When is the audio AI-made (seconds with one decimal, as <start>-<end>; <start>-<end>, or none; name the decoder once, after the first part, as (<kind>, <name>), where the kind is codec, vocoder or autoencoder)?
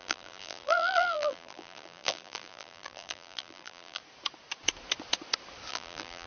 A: 0.0-4.0 (vocoder, BigVGAN v2); 5.7-6.3